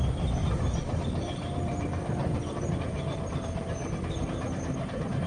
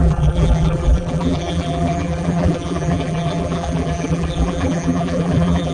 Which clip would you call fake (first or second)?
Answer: second